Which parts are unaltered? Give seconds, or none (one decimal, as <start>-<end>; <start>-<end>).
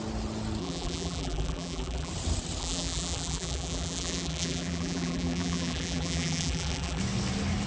0.0-0.6; 2.1-2.6; 7.0-7.7